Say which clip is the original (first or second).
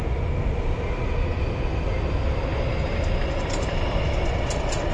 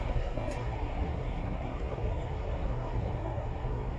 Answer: first